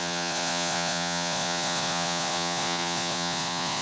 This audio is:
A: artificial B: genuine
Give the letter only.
A